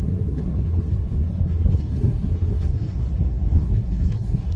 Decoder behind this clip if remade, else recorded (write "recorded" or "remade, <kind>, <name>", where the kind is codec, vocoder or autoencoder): remade, codec, SNAC